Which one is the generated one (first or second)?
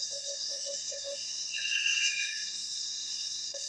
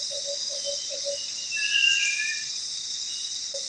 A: first